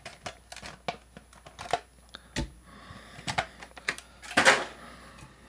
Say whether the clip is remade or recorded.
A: recorded